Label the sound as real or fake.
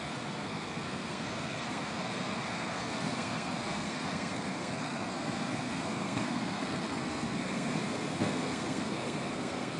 fake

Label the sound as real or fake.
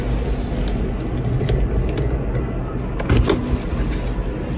real